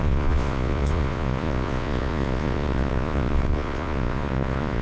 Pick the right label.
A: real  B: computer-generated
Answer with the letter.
B